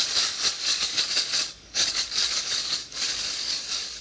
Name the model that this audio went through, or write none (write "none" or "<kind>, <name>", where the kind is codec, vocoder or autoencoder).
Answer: codec, DAC